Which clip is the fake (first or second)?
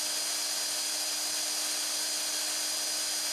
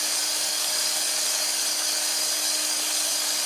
second